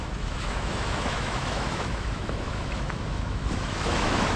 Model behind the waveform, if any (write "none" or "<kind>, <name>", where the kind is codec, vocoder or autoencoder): autoencoder, DAC-VAE